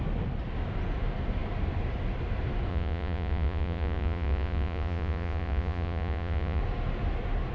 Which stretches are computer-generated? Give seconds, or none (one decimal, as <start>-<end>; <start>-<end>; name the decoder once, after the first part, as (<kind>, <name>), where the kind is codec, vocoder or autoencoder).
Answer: 2.7-6.6 (vocoder, Vocos)